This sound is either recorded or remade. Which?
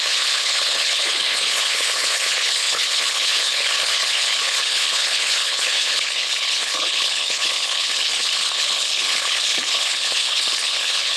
remade